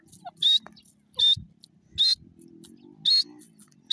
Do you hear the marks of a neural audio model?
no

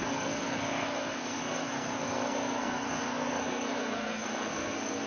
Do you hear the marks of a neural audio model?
yes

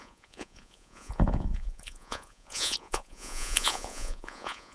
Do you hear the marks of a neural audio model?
yes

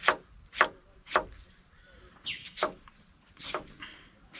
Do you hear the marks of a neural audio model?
no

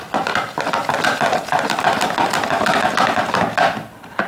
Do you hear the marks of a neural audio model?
no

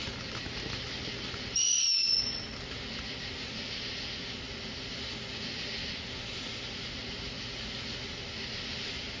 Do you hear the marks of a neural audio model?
no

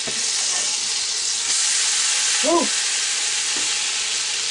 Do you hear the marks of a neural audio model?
no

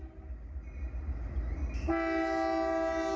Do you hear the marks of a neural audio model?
no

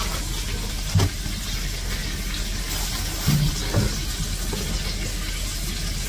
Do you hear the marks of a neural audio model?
no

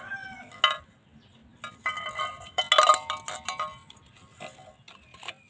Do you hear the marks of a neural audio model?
no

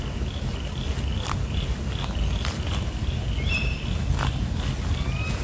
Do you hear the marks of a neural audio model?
no